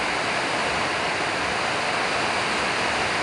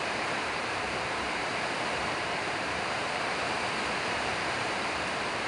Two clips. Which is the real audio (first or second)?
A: first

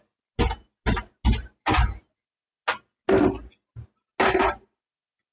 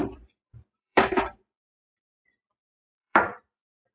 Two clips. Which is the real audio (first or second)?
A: first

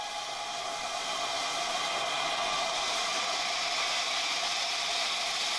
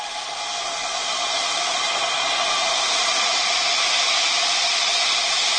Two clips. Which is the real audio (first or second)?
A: first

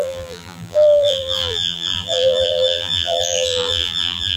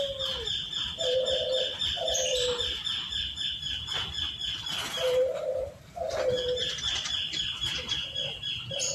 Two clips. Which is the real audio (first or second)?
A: second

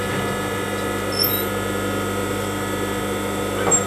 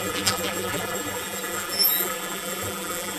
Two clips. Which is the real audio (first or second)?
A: first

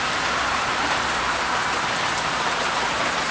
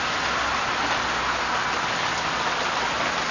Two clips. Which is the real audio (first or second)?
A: second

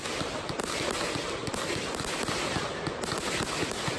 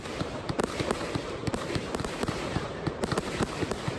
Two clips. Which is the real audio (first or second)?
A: first